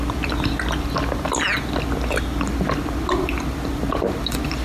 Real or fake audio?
real